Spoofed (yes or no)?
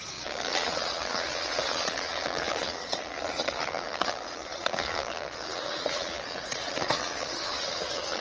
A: yes